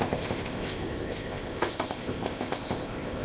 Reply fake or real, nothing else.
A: fake